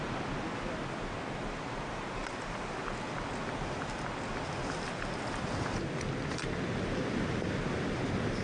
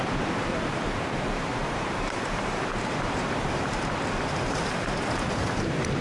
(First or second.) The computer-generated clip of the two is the second